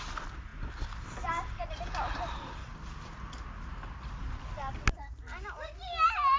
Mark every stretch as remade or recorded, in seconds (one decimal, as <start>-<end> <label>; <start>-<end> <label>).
0.0-6.4 recorded